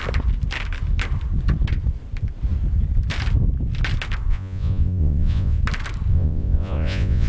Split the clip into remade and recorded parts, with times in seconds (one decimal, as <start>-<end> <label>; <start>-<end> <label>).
0.0-4.3 recorded; 4.3-5.6 remade; 5.6-6.1 recorded; 6.1-7.3 remade